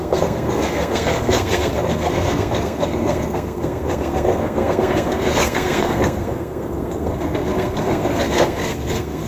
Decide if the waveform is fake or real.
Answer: fake